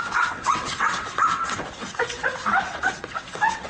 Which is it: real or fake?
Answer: fake